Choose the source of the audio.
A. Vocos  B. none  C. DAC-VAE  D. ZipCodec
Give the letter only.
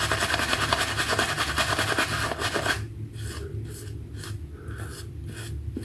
B